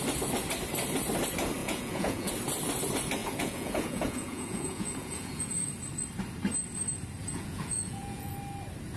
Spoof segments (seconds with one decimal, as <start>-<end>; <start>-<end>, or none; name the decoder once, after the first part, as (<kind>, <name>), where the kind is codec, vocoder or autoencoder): 1.6-2.3 (vocoder, Vocos); 3.2-5.7; 7.2-8.3

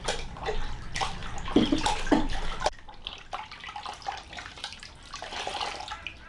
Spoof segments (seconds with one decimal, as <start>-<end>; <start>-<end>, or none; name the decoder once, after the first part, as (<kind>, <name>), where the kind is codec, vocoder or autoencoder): none